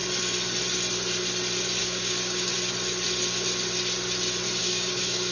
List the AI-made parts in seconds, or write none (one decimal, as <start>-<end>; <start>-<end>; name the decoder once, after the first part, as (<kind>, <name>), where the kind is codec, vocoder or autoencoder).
1.8-2.5 (codec, DAC); 4.6-5.3